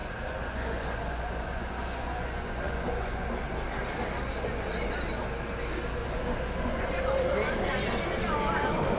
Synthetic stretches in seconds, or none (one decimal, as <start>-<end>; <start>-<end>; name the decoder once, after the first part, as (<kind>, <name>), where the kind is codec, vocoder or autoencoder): 0.0-3.3 (vocoder, Vocos); 6.0-6.9